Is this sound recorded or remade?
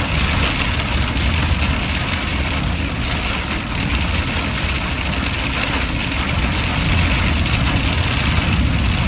recorded